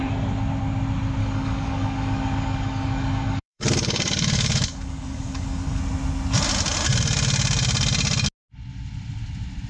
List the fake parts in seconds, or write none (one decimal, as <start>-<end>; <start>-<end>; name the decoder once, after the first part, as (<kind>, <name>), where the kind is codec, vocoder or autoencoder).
1.2-5.8 (codec, DAC)